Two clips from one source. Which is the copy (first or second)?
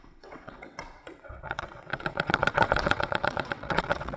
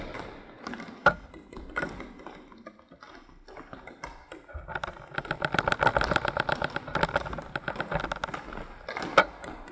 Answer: first